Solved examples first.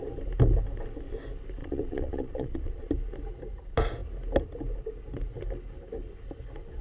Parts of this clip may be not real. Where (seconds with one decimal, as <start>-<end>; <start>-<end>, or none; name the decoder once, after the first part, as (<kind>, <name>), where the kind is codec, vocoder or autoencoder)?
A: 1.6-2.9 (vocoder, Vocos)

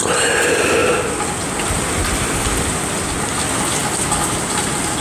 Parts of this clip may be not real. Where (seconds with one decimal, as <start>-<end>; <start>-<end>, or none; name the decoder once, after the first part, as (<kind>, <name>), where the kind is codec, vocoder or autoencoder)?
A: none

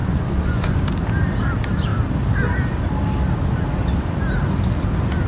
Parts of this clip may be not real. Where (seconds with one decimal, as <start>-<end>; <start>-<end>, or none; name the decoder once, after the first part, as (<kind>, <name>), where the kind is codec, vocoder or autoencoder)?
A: 0.0-0.8 (vocoder, Vocos)